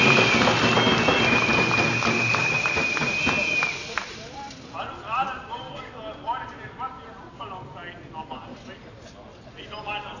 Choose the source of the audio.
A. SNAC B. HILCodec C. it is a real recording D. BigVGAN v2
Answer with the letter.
C